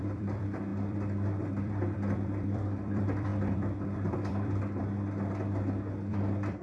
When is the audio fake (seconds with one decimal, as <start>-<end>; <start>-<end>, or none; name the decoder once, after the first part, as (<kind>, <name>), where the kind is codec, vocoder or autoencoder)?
0.0-4.8 (vocoder, BigVGAN v2); 6.1-6.6